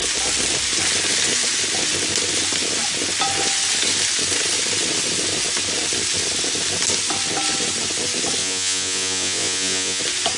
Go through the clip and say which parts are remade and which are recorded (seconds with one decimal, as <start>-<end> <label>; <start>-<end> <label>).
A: 0.0-8.4 recorded; 8.4-10.0 remade; 10.0-10.4 recorded